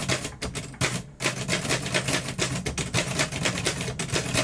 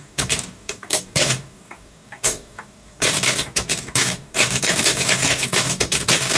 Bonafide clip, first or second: first